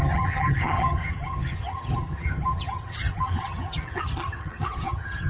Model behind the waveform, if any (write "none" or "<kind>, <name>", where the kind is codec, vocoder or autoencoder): vocoder, HiFi-GAN